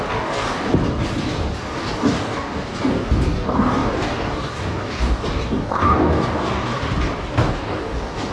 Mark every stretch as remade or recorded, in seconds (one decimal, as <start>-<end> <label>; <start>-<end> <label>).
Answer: 0.0-0.7 remade; 0.7-1.8 recorded; 1.8-6.7 remade; 6.7-7.5 recorded; 7.5-8.3 remade